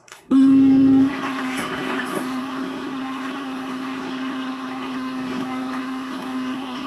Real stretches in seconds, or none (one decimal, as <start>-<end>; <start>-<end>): none